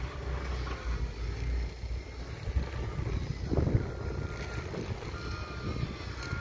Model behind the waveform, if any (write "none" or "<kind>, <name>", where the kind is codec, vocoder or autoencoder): none